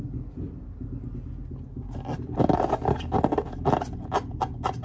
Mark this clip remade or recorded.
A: recorded